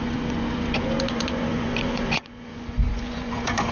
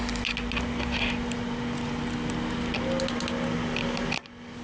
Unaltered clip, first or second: second